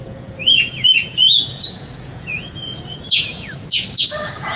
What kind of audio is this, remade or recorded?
remade